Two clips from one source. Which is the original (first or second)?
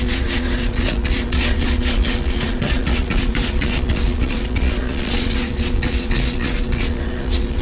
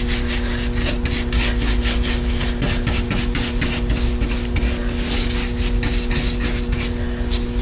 second